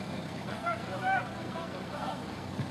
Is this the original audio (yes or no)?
no